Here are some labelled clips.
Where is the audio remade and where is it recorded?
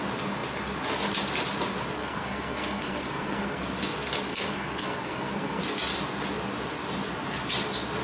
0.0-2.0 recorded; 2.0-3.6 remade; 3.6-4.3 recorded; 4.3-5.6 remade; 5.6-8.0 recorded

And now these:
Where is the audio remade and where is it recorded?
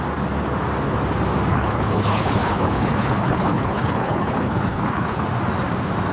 0.0-1.5 recorded; 1.5-5.2 remade; 5.2-6.1 recorded